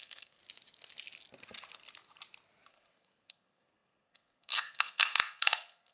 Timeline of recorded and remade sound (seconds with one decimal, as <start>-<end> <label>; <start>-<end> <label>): 0.0-0.4 remade; 0.4-2.7 recorded; 2.7-5.9 remade